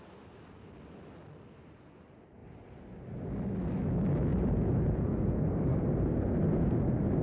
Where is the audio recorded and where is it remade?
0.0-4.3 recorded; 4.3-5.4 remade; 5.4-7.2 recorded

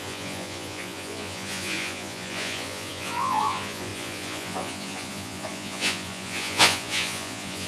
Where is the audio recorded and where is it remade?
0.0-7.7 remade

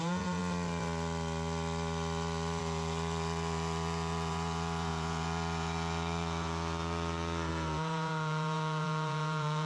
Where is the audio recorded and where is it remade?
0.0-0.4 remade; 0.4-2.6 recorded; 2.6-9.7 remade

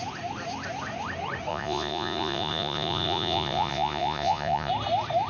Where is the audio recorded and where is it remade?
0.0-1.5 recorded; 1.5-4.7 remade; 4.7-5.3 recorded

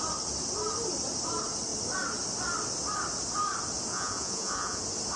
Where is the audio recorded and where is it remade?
0.0-3.9 recorded; 3.9-4.8 remade; 4.8-5.2 recorded

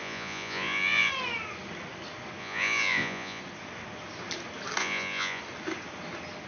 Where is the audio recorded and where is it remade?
0.0-1.1 remade; 1.1-2.4 recorded; 2.4-3.4 remade; 3.4-4.8 recorded; 4.8-5.4 remade; 5.4-6.5 recorded

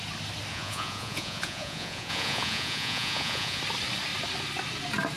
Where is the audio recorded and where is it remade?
0.0-0.5 recorded; 0.5-3.6 remade; 3.6-5.2 recorded